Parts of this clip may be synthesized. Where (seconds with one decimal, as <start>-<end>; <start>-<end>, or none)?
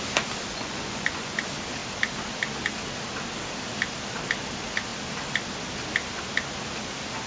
0.5-1.4